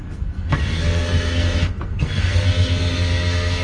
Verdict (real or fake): fake